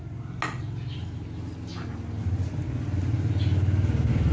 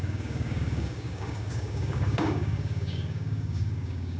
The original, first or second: first